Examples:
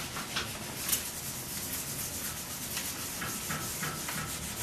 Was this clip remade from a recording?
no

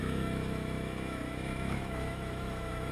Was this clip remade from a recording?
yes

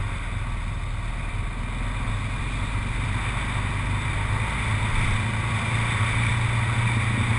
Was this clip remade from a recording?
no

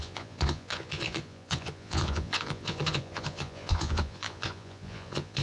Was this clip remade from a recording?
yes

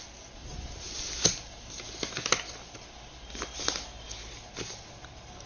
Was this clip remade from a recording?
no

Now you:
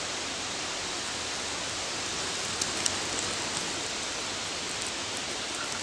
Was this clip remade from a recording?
no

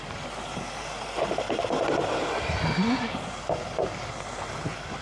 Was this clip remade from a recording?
no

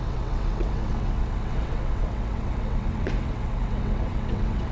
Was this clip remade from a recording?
yes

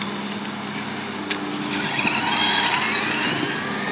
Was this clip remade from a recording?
no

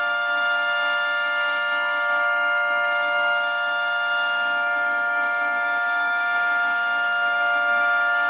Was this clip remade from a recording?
yes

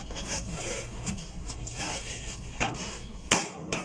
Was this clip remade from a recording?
yes